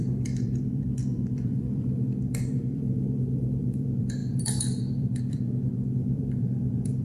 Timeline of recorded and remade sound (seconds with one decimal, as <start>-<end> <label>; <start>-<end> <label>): 0.0-7.0 remade